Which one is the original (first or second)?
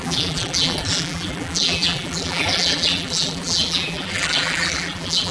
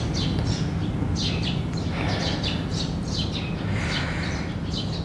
second